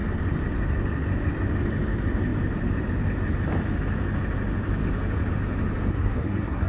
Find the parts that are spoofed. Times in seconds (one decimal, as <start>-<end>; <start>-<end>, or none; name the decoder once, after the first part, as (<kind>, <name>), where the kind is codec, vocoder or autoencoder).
5.9-6.7 (codec, SNAC)